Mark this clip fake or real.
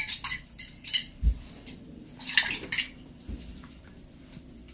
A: fake